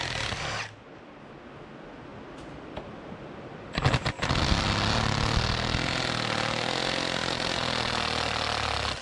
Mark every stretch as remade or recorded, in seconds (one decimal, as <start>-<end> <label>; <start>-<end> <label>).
0.0-9.0 recorded